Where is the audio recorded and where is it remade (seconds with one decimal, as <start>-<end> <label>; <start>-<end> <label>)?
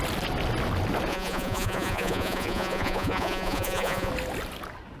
0.0-1.1 recorded; 1.1-4.1 remade; 4.1-5.0 recorded